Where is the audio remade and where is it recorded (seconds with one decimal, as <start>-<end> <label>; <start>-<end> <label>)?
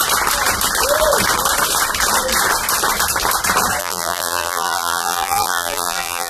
0.0-3.8 recorded; 3.8-6.3 remade